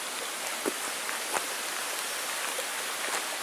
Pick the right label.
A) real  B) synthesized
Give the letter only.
A